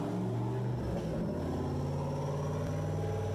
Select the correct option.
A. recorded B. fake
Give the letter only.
A